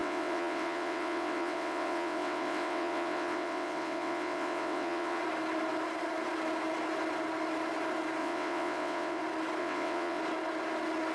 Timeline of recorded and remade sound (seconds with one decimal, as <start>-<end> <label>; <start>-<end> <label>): 0.0-5.2 remade; 5.2-8.2 recorded; 8.2-9.2 remade; 9.2-9.6 recorded; 9.6-10.2 remade; 10.2-11.1 recorded